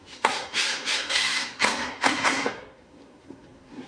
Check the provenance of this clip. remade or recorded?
remade